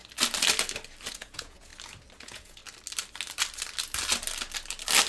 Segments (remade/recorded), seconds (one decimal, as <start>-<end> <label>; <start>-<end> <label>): 0.0-1.1 recorded; 1.1-1.7 remade; 1.7-2.2 recorded; 2.2-2.6 remade; 2.6-5.1 recorded